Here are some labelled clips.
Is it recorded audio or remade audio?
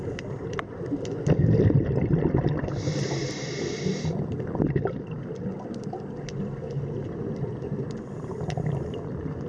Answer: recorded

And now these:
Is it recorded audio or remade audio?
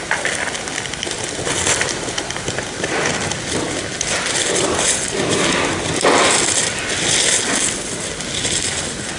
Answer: recorded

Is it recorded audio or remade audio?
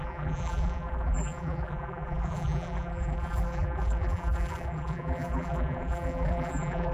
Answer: remade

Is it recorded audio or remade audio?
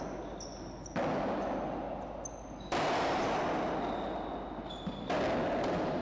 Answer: recorded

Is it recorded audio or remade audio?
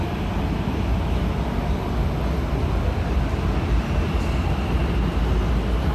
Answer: recorded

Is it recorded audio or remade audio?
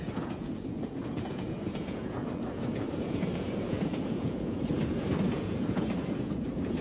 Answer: remade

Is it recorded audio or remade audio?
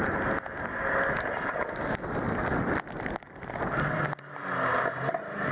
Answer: recorded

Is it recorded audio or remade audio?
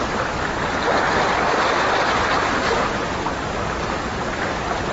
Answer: recorded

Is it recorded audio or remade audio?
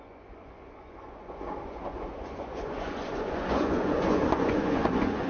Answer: remade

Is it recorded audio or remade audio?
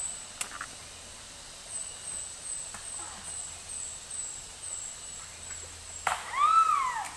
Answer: recorded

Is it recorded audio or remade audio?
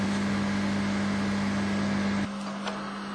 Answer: recorded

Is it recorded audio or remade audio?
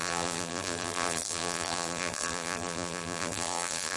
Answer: remade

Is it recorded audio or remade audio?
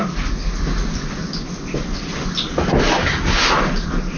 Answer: recorded